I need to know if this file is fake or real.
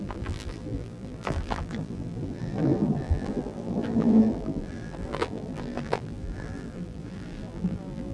fake